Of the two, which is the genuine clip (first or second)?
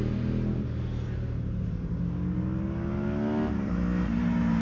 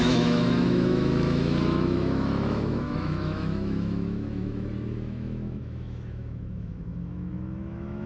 first